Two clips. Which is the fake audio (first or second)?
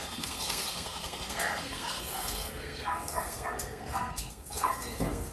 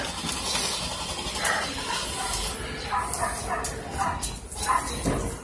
first